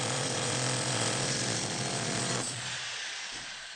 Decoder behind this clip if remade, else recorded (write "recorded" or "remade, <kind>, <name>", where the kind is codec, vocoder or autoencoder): remade, vocoder, Vocos